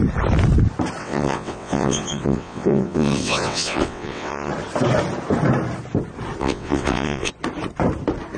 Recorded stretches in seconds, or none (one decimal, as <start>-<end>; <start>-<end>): 0.0-1.0; 4.5-6.4; 7.3-8.4